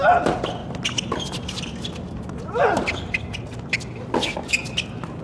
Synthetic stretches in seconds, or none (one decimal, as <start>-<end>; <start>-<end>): none